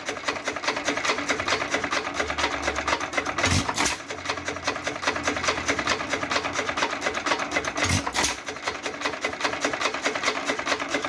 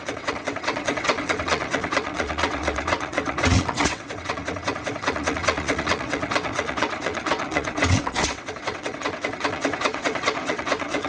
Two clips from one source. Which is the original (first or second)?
first